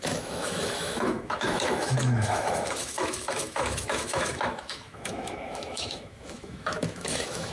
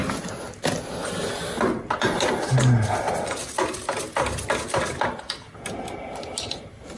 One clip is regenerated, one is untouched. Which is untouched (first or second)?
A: second